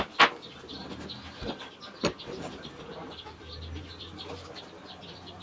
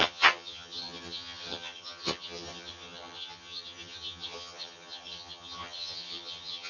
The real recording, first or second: first